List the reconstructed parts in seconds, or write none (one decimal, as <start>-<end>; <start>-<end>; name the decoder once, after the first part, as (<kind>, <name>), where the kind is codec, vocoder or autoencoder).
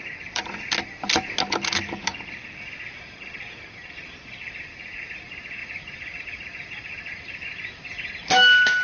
5.6-8.1 (vocoder, BigVGAN v2)